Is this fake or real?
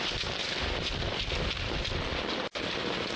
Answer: real